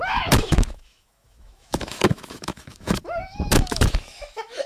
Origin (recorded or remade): remade